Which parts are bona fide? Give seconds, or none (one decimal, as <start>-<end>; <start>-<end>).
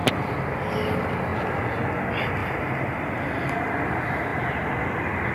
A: 0.7-1.3; 1.8-2.4; 3.1-4.3